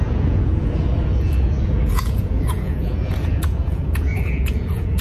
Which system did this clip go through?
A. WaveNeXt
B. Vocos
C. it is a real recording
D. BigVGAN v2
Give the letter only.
B